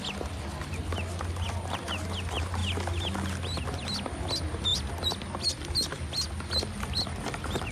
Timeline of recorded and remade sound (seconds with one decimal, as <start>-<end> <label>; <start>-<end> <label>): 0.0-7.7 recorded